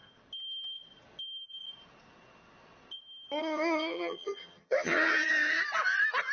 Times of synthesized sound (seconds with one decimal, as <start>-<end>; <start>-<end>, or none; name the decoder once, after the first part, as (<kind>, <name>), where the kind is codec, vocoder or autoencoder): 3.4-5.3 (vocoder, HiFi-GAN)